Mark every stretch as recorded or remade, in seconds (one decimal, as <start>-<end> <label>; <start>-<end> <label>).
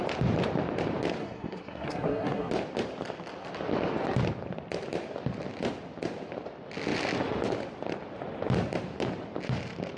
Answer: 0.0-1.2 recorded; 1.2-2.5 remade; 2.5-10.0 recorded